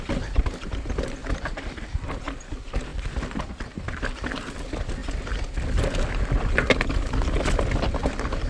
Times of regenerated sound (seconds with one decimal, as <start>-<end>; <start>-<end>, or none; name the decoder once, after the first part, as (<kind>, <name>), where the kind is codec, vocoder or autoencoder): 1.2-2.2 (vocoder, BigVGAN v2); 8.0-8.5